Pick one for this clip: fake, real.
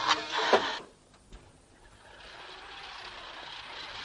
real